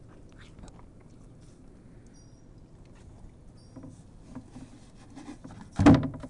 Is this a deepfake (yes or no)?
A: no